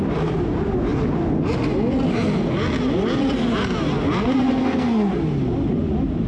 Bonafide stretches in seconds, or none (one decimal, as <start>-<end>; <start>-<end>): 0.0-4.5; 5.1-6.3